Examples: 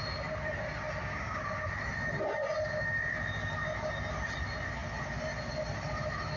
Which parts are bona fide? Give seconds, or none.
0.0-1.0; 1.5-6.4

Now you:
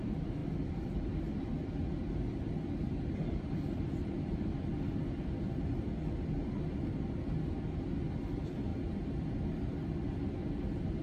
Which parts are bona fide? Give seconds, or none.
0.0-0.4; 1.2-3.2; 5.3-11.0

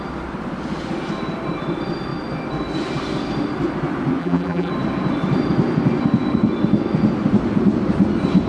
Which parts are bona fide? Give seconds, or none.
0.0-4.2; 4.7-8.5

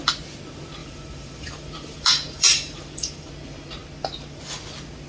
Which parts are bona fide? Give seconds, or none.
0.0-0.8; 3.3-5.1

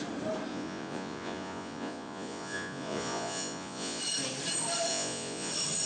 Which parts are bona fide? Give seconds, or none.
0.0-0.5; 4.0-4.9; 5.5-5.9